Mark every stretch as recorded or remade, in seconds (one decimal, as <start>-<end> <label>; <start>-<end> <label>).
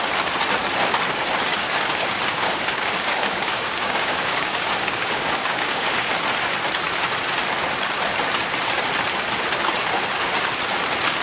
0.0-1.5 recorded; 1.5-6.1 remade; 6.1-11.2 recorded